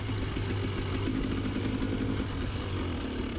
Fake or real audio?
real